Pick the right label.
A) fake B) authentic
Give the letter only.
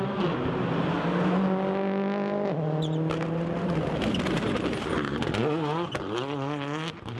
B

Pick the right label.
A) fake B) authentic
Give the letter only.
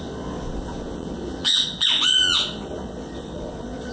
A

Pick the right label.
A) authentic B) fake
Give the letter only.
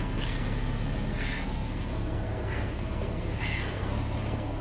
B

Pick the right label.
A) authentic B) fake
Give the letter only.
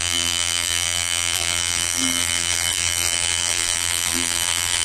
B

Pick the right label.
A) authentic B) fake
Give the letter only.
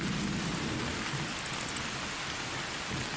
A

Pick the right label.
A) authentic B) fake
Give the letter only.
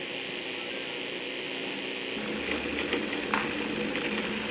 A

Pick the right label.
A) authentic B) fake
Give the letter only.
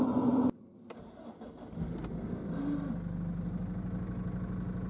A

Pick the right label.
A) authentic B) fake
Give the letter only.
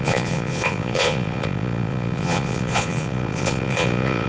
B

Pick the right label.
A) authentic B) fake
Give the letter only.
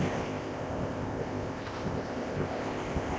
B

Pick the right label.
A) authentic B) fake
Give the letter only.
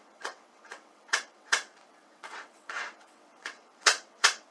B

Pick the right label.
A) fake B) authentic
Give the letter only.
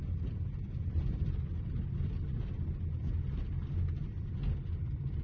B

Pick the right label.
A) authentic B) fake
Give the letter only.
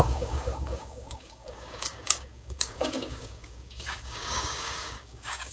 B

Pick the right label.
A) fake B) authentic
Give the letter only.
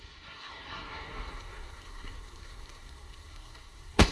A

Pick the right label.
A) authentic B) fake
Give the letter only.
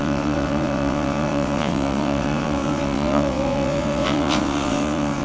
B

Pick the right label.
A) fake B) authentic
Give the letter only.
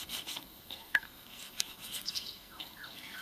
A